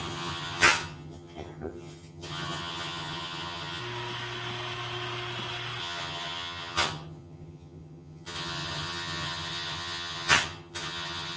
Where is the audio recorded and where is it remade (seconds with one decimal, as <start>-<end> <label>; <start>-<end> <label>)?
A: 0.0-3.8 remade; 3.8-5.8 recorded; 5.8-11.4 remade